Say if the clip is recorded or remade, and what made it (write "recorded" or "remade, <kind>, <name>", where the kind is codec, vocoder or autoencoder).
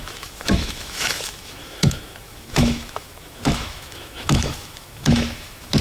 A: remade, autoencoder, DAC-VAE